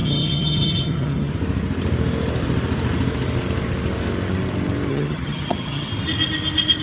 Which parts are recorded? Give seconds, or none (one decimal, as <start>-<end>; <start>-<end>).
1.3-4.9; 5.9-6.8